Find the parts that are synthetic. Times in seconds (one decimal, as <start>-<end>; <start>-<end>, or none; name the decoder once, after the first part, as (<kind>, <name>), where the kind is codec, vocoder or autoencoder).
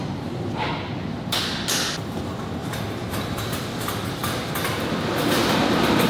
none